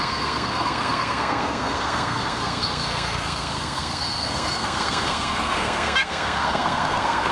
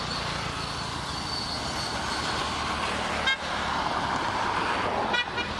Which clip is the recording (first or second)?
second